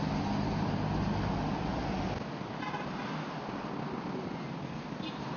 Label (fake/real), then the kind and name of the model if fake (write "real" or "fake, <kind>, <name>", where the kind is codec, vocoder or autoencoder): real